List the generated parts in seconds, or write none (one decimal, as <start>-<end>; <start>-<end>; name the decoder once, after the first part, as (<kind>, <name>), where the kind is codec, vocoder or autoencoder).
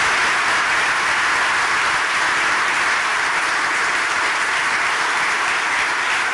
none